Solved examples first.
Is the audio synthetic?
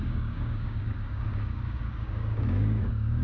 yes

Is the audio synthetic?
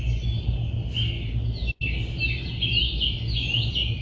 no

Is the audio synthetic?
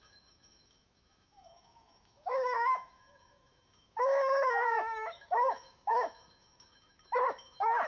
yes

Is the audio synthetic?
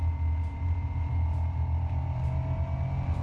no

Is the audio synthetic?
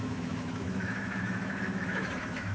yes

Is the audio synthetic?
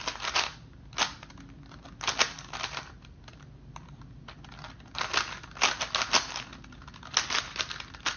no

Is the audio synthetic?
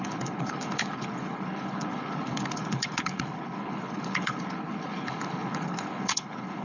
yes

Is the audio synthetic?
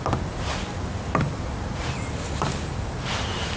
no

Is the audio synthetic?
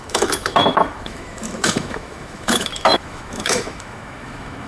yes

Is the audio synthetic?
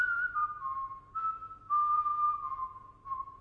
no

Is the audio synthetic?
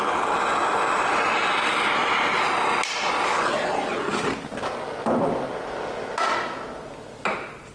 no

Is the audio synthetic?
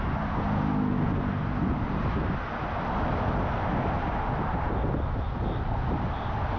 no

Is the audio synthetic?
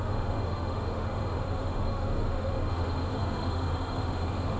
yes